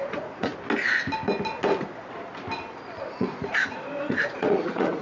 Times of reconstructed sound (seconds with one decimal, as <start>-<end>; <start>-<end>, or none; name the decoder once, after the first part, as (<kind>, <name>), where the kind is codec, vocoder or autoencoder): 0.0-0.5 (vocoder, Vocos); 3.1-5.0

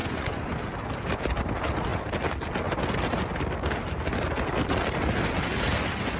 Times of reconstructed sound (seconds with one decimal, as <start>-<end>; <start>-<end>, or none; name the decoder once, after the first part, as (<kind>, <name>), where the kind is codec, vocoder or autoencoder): 0.0-0.6 (vocoder, Vocos)

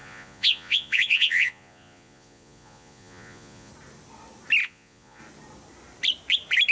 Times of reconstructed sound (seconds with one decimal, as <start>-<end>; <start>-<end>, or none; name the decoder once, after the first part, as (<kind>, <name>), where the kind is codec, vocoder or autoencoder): 0.0-3.7 (vocoder, Vocos); 4.6-5.2

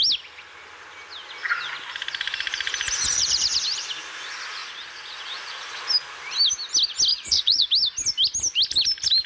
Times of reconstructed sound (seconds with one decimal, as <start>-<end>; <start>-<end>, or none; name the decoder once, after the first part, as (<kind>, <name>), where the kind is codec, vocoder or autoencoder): 4.6-5.8 (vocoder, Vocos); 7.1-7.7

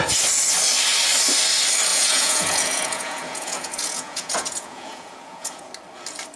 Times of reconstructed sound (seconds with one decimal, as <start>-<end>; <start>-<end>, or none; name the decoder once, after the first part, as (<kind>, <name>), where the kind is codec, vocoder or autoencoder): 1.9-5.7 (vocoder, Vocos)

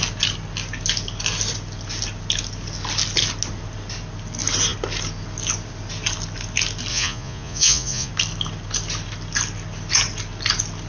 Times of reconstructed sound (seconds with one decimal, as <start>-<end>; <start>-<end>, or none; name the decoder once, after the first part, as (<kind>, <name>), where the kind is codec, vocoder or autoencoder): 6.9-8.1 (vocoder, Vocos)

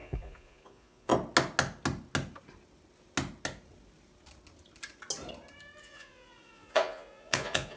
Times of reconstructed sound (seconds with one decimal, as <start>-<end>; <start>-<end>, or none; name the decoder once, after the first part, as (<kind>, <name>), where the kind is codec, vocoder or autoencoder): 0.0-1.1 (vocoder, Vocos); 5.8-7.8